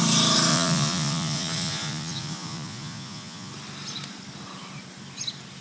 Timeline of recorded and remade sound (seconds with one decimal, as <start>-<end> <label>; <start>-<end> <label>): 0.0-0.5 recorded; 0.5-3.5 remade; 3.5-5.6 recorded